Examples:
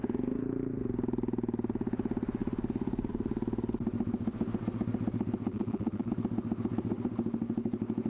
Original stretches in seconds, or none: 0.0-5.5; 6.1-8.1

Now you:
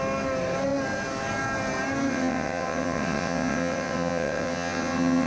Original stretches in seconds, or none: 0.0-2.1